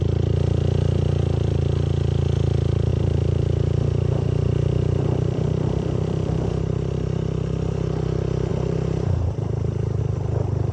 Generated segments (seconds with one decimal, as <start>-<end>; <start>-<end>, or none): 2.9-6.5; 8.5-10.0